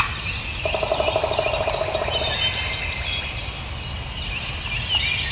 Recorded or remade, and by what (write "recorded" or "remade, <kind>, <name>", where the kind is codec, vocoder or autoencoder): recorded